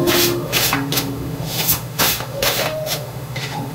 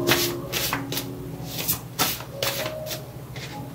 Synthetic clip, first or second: first